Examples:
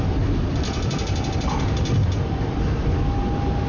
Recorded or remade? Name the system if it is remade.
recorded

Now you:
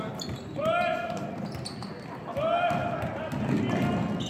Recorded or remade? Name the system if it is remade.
recorded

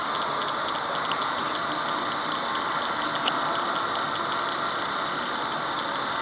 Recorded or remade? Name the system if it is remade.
recorded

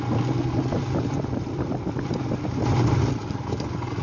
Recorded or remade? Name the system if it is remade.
recorded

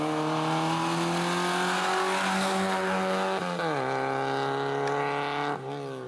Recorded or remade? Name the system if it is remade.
recorded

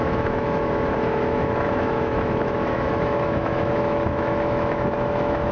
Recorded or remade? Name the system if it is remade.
remade, autoencoder, DAC-VAE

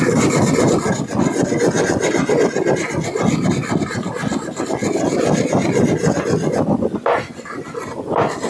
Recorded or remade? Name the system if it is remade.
recorded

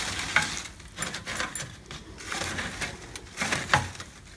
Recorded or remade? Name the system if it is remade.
recorded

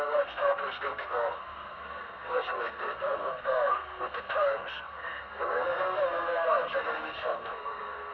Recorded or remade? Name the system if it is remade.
remade, codec, SNAC